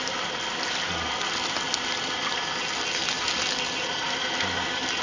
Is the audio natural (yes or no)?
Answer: yes